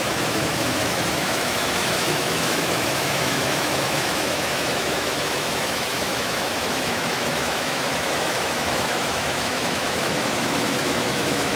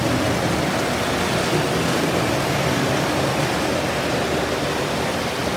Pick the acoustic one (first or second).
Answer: second